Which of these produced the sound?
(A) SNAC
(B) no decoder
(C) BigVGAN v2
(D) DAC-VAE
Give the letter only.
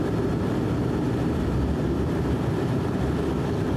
C